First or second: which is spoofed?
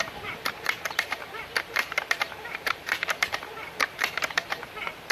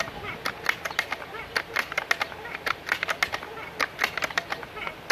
first